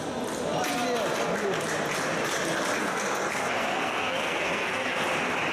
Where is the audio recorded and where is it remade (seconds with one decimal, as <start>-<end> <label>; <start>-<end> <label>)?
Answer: 0.0-2.8 recorded; 2.8-5.0 remade; 5.0-5.5 recorded